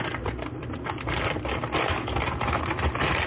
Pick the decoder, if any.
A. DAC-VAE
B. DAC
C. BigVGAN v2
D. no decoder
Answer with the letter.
D